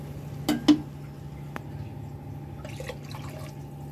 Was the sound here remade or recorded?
recorded